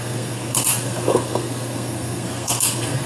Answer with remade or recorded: remade